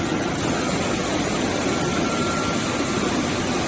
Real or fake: real